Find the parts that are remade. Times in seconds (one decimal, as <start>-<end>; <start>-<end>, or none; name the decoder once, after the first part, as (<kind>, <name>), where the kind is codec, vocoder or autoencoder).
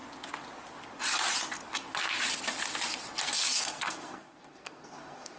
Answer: 3.2-5.4 (codec, SNAC)